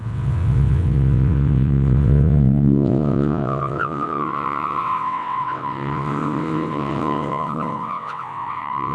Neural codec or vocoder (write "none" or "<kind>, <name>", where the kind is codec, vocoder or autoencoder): vocoder, WaveNeXt